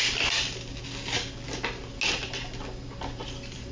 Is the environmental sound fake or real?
real